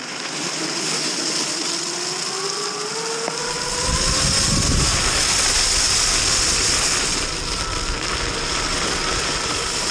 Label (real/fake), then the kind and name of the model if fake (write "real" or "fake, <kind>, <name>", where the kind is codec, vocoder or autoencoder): real